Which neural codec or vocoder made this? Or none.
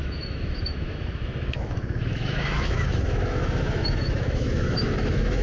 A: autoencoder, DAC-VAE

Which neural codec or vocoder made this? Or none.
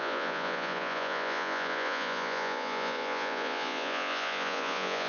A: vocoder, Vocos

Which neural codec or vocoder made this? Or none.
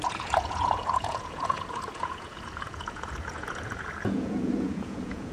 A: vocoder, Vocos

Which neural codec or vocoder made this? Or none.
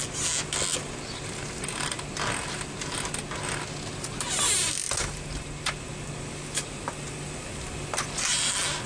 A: none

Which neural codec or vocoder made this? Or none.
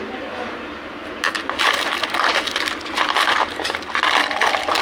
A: none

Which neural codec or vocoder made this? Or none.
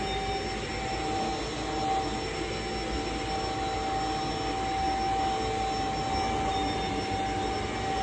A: none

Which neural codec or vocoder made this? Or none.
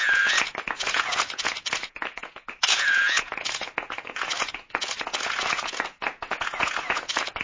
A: vocoder, Vocos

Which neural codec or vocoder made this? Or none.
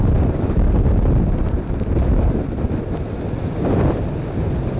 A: none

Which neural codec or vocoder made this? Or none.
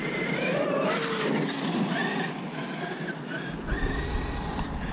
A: none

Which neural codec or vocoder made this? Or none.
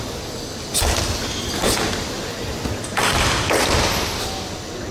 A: none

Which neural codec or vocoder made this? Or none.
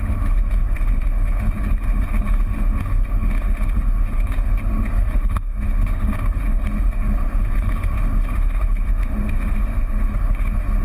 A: autoencoder, DAC-VAE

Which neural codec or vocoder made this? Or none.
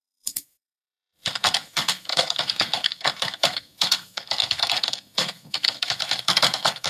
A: codec, SNAC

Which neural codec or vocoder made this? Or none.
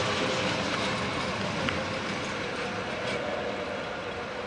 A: none